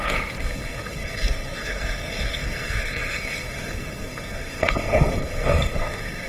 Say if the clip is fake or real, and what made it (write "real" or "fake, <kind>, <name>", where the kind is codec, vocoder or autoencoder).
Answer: fake, codec, SNAC